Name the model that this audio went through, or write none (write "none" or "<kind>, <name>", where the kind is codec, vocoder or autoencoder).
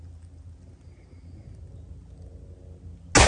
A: none